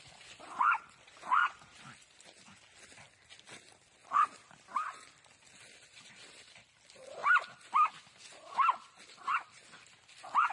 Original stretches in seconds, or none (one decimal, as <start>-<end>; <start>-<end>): 0.0-10.5